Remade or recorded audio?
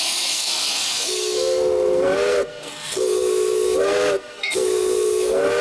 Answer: remade